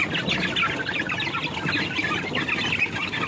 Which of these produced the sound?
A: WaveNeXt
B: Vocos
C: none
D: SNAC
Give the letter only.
C